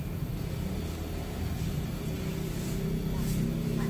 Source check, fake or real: real